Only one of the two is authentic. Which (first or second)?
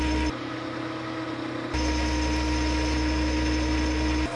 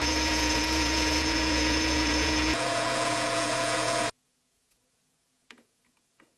first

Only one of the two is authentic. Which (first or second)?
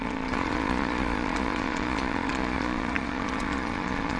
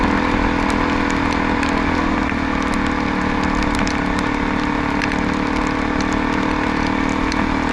second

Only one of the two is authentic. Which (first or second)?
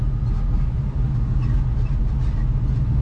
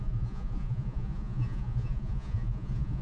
first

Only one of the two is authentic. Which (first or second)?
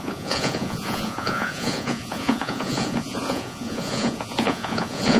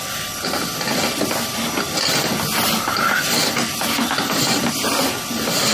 second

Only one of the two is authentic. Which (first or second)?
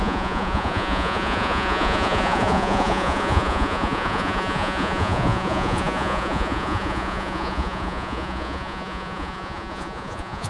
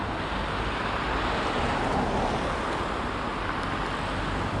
second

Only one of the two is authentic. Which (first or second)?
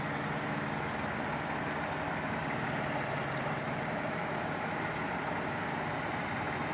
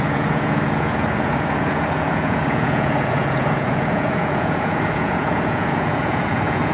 first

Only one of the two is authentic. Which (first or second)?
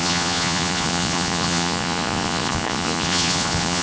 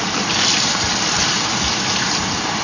second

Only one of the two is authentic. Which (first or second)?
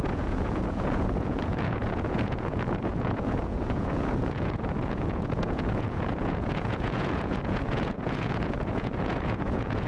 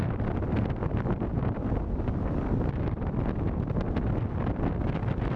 second